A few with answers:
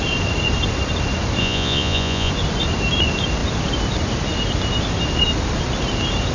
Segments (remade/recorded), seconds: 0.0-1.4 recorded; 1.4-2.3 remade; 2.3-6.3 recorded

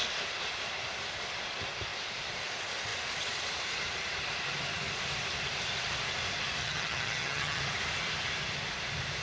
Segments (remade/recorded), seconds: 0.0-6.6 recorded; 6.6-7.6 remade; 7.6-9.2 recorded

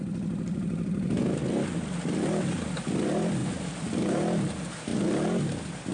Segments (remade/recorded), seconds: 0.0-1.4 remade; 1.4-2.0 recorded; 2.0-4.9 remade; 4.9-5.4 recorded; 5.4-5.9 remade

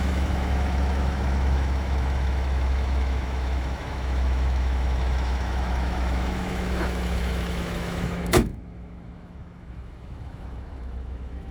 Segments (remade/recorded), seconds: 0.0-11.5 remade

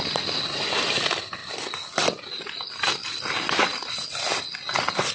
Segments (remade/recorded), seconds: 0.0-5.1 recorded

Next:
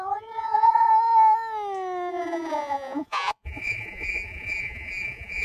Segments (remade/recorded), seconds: 0.0-0.9 remade; 0.9-2.1 recorded; 2.1-5.4 remade

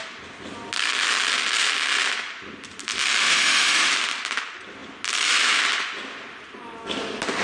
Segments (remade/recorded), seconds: 0.0-3.2 recorded; 3.2-3.9 remade; 3.9-7.4 recorded